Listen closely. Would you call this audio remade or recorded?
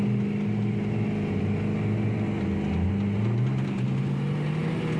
recorded